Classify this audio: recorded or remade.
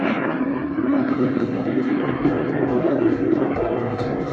remade